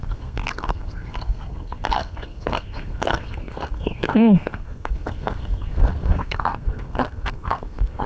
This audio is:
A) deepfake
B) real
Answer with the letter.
A